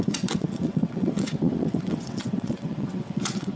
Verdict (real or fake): fake